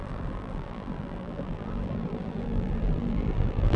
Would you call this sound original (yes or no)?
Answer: no